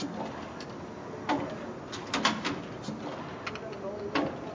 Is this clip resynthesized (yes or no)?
no